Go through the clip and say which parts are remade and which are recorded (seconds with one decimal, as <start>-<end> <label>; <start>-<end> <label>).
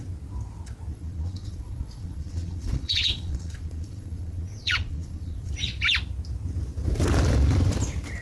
0.0-0.9 recorded; 0.9-5.5 remade; 5.5-8.2 recorded